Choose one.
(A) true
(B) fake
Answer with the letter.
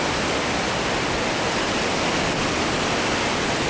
A